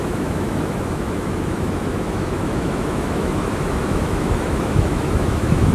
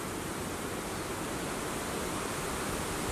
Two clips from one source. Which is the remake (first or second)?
first